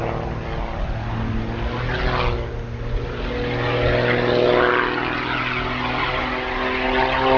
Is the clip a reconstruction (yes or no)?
no